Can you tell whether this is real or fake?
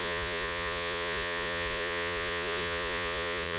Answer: fake